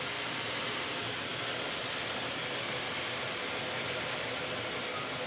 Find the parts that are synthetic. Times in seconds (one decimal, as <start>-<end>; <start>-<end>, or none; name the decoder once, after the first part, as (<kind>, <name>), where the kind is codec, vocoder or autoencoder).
none